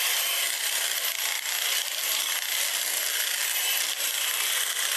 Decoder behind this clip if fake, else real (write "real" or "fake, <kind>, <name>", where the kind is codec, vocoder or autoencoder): fake, vocoder, BigVGAN v2